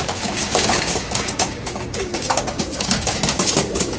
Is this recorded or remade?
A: remade